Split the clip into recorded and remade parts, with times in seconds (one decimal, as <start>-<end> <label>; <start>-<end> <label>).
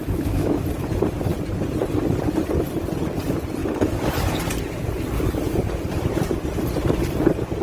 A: 0.0-0.6 remade; 0.6-7.6 recorded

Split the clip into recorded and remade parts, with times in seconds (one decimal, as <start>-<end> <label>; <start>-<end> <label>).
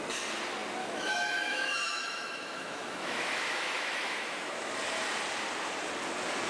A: 0.0-0.8 recorded; 0.8-4.7 remade; 4.7-6.5 recorded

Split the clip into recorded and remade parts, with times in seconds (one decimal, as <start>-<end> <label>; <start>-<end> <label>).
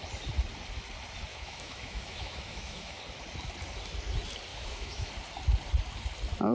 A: 0.0-1.3 recorded; 1.3-3.0 remade; 3.0-4.5 recorded; 4.5-5.1 remade; 5.1-6.5 recorded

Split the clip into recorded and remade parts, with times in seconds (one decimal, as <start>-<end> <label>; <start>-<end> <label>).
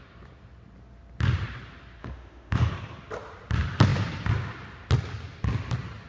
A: 0.0-2.0 recorded; 2.0-2.7 remade; 2.7-6.1 recorded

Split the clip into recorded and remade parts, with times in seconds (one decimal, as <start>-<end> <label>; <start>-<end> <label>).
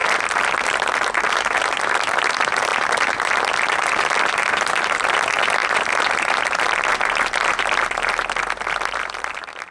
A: 0.0-9.7 recorded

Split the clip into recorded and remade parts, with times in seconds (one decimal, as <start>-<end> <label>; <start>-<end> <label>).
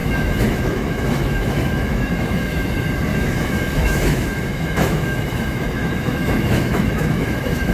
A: 0.0-2.7 remade; 2.7-3.1 recorded; 3.1-7.7 remade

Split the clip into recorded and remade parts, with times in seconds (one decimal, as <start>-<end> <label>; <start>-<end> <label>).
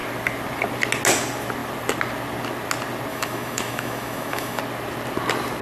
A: 0.0-3.1 recorded; 3.1-4.6 remade; 4.6-5.6 recorded